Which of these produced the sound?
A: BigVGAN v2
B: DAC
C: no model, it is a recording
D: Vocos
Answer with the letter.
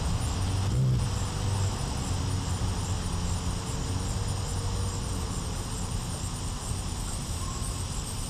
C